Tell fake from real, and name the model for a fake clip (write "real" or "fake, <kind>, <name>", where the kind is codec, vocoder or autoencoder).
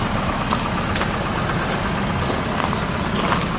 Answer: real